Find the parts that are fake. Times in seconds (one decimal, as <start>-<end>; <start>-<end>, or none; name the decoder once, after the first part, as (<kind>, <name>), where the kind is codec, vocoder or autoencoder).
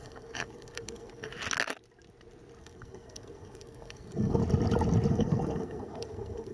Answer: 0.0-1.3 (codec, SNAC); 2.6-4.4; 5.1-6.5